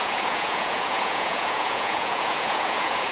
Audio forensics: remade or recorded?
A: remade